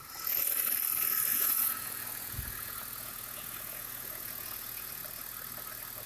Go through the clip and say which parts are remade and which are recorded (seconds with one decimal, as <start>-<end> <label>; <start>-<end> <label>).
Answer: 0.0-1.3 recorded; 1.3-5.0 remade; 5.0-6.1 recorded